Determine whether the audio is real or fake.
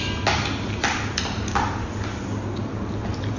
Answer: real